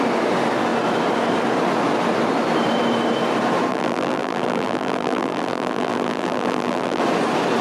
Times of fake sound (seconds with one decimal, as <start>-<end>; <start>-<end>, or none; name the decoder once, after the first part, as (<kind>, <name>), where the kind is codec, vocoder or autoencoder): 3.7-7.0 (vocoder, BigVGAN v2)